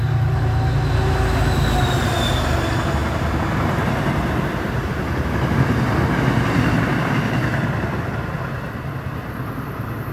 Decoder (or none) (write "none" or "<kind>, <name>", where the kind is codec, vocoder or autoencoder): none